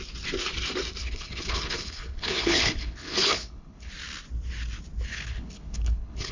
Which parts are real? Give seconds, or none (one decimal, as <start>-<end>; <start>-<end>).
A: 0.0-1.0; 3.9-5.1

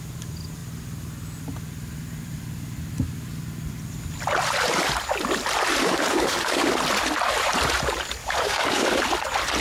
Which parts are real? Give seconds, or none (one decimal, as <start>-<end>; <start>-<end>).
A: 0.0-5.8; 6.7-8.2; 9.0-9.6

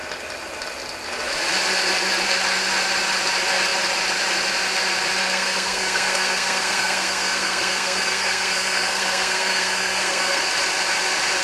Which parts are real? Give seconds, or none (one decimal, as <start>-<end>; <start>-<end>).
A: 0.0-5.2; 10.4-11.4

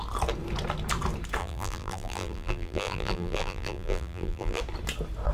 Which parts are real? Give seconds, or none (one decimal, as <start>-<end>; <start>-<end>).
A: 0.0-1.4; 4.6-5.3

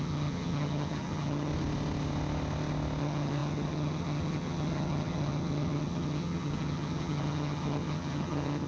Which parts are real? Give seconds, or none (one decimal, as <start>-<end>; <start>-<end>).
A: 1.5-3.0

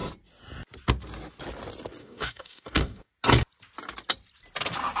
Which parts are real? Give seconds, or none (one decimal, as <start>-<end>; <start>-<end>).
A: 0.0-2.0; 3.1-5.0

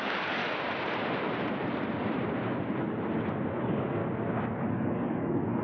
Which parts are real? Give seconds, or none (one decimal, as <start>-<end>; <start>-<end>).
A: 0.4-3.5; 4.0-4.6